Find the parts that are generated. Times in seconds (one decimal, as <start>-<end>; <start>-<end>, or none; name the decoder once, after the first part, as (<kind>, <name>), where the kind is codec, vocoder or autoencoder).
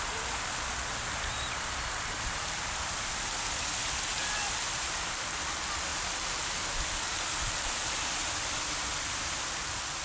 none